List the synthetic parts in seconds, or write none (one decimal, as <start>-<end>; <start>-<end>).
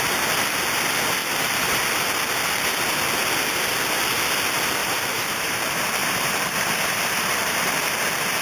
1.2-2.0; 4.8-5.6; 6.0-7.7